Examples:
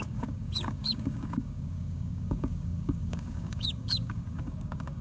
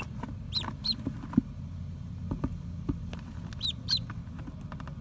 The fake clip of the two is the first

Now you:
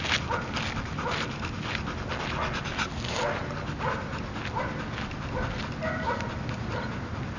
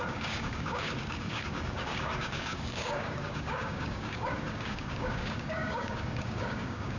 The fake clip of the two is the second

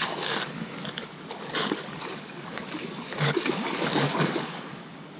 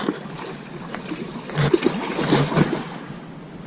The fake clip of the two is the first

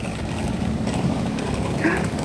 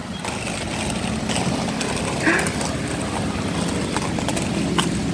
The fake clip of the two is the first